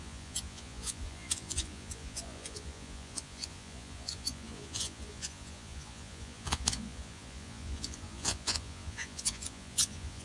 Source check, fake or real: fake